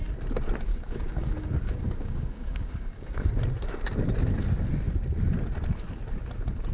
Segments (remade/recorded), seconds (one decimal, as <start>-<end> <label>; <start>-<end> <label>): 0.0-0.7 recorded; 0.7-3.3 remade; 3.3-6.7 recorded